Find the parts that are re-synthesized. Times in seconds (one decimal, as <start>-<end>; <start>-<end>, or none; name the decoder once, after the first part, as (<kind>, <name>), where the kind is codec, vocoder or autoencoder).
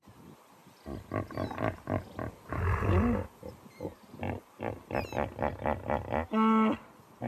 0.6-5.0 (vocoder, BigVGAN v2)